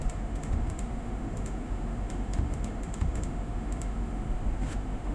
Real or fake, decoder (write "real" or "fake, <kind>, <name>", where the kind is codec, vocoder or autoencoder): fake, autoencoder, DAC-VAE